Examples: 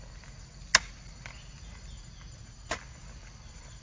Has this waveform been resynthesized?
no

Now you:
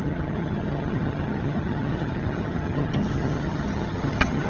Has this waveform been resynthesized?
yes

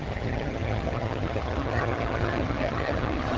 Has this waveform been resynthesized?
yes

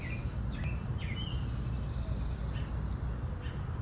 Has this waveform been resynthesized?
no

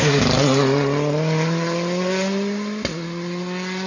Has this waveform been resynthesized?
no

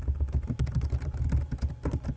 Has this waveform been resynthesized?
no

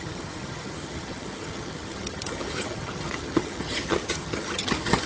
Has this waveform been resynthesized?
yes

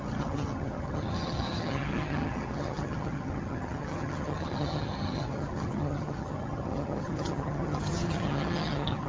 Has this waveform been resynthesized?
yes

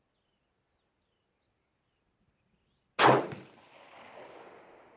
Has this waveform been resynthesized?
no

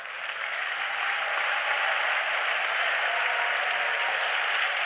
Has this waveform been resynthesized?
no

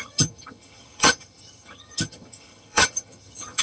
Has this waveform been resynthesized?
yes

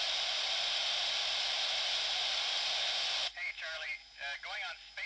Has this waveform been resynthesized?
no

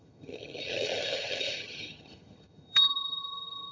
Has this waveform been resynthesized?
yes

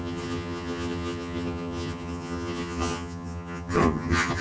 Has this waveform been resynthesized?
yes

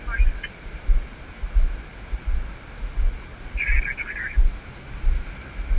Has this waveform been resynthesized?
no